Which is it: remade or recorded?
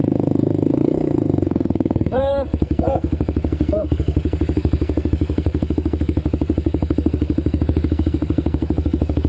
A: remade